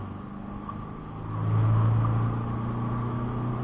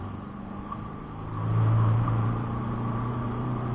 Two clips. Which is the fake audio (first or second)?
second